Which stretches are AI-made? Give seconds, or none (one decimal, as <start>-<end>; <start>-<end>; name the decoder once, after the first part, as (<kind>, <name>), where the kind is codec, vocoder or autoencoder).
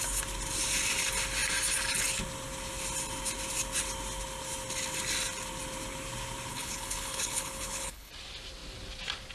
6.5-8.1 (codec, HILCodec)